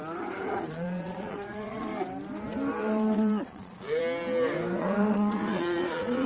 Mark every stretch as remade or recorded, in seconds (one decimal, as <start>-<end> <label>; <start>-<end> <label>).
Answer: 0.0-0.6 recorded; 0.6-1.9 remade; 1.9-2.8 recorded; 2.8-4.0 remade; 4.0-4.8 recorded; 4.8-6.3 remade